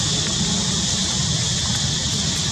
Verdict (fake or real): real